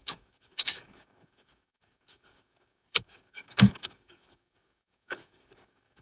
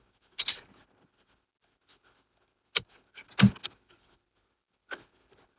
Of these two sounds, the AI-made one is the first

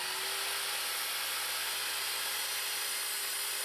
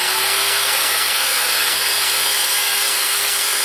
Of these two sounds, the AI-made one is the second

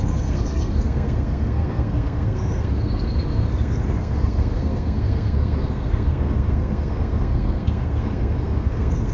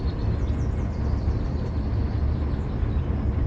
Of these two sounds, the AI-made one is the first